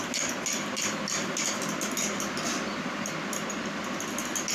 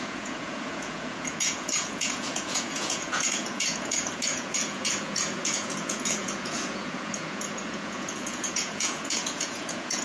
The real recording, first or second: first